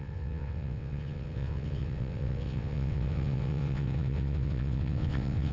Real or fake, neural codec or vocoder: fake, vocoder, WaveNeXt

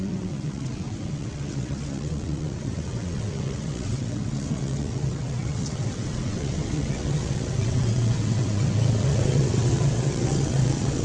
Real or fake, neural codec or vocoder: fake, vocoder, WaveNeXt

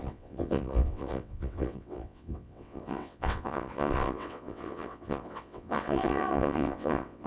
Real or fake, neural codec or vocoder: fake, vocoder, WaveNeXt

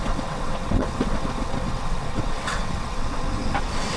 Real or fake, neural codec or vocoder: fake, vocoder, WaveNeXt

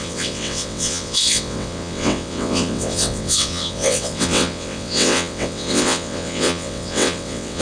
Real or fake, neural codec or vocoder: fake, vocoder, WaveNeXt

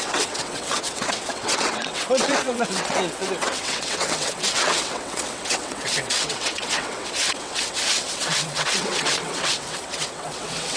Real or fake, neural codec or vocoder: fake, vocoder, WaveNeXt